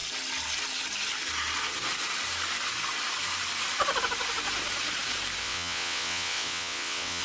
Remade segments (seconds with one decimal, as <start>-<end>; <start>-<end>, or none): 5.4-7.2

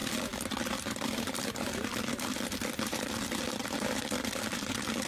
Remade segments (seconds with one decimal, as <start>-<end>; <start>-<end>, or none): 0.0-3.1; 3.6-4.4

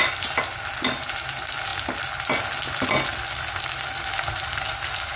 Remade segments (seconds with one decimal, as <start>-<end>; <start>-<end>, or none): none